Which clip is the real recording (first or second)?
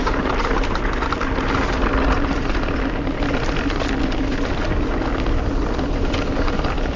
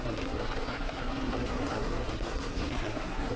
first